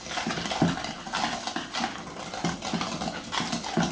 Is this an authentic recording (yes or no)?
yes